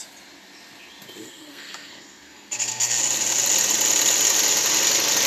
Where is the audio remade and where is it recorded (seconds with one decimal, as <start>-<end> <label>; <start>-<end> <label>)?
0.0-1.2 recorded; 1.2-3.0 remade; 3.0-5.3 recorded